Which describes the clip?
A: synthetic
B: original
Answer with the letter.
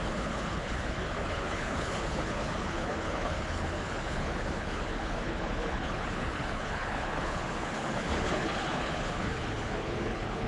A